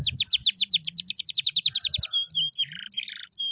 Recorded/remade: recorded